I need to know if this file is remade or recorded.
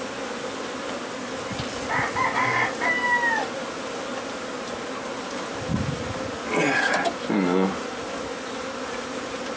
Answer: recorded